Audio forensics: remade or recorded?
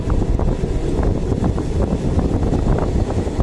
recorded